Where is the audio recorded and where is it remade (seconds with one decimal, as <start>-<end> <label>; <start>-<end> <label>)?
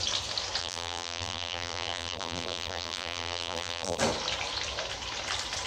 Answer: 0.0-0.6 recorded; 0.6-4.0 remade; 4.0-5.7 recorded